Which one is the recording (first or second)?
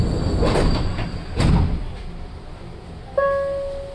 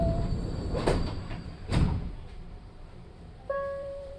first